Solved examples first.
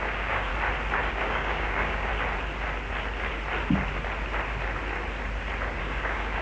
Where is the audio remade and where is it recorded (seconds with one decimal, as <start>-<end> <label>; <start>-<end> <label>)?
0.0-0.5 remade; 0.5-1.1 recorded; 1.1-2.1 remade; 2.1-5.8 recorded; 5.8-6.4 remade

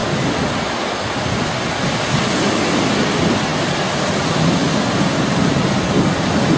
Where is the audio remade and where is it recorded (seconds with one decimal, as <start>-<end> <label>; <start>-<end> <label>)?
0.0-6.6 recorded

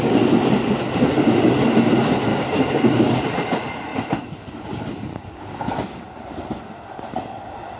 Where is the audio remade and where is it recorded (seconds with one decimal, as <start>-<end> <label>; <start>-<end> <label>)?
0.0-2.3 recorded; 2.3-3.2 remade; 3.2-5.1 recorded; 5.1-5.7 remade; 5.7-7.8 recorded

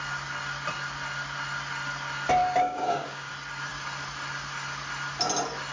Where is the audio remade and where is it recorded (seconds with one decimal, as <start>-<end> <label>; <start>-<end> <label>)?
0.0-2.4 recorded; 2.4-3.3 remade; 3.3-5.7 recorded

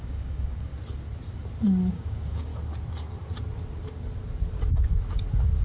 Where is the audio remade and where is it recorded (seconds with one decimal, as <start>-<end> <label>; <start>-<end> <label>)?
0.0-0.7 remade; 0.7-1.9 recorded; 1.9-2.5 remade; 2.5-5.6 recorded

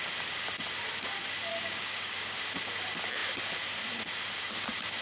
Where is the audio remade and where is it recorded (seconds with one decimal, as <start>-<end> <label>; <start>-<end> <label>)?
0.0-1.5 recorded; 1.5-2.4 remade; 2.4-5.0 recorded

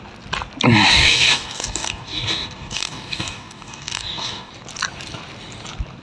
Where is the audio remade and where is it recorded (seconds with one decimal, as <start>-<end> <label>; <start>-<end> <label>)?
0.0-0.9 recorded; 0.9-4.5 remade; 4.5-6.0 recorded

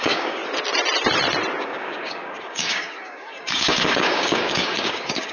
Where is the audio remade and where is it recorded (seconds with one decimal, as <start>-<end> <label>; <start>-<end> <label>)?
0.0-0.4 remade; 0.4-1.6 recorded; 1.6-5.3 remade